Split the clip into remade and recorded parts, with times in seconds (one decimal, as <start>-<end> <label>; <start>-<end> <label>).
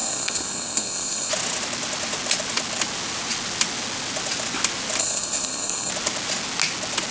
0.0-1.3 remade; 1.3-5.0 recorded; 5.0-5.9 remade; 5.9-7.1 recorded